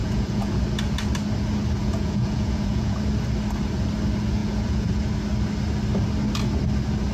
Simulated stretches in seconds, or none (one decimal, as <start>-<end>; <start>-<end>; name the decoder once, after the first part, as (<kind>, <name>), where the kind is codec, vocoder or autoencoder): 0.0-0.6 (vocoder, Vocos); 1.8-3.0; 4.4-5.1